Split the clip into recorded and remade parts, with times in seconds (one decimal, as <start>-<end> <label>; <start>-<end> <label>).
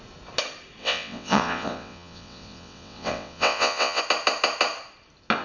0.0-0.8 recorded; 0.8-4.0 remade; 4.0-5.4 recorded